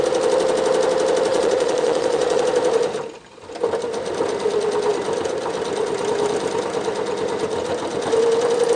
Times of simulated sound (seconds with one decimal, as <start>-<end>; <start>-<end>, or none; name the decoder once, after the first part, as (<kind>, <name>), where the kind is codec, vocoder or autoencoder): 1.3-2.4 (vocoder, Vocos)